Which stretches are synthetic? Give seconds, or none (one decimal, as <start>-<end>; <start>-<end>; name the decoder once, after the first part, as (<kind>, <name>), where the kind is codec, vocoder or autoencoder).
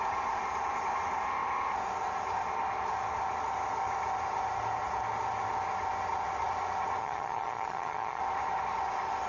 7.0-8.2 (vocoder, HiFi-GAN)